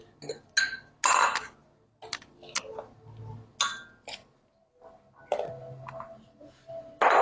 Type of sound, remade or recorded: recorded